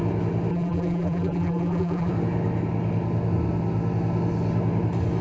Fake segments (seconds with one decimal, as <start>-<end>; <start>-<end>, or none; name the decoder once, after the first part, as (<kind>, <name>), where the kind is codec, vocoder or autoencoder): 0.5-2.1 (vocoder, BigVGAN v2)